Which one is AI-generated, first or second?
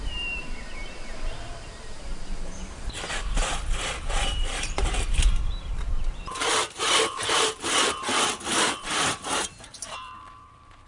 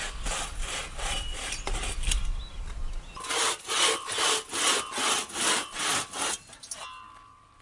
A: first